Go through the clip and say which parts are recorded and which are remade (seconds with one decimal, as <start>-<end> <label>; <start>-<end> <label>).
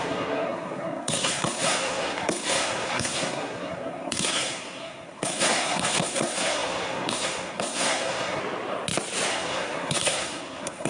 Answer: 0.0-8.4 remade; 8.4-9.3 recorded; 9.3-10.9 remade